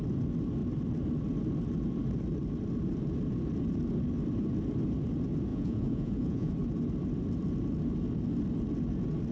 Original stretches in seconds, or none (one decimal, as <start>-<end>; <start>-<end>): 0.0-5.5; 6.5-9.3